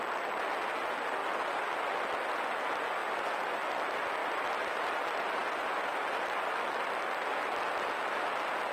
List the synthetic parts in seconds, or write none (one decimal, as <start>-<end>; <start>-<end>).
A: none